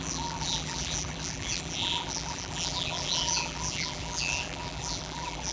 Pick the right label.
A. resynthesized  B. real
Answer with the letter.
A